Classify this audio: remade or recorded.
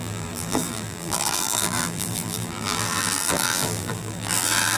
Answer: remade